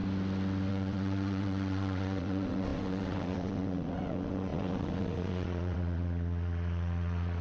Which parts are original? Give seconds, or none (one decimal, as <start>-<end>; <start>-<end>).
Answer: 0.0-0.7